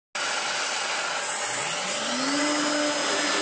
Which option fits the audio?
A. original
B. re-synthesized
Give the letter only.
A